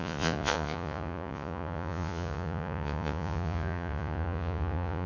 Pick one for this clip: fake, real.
fake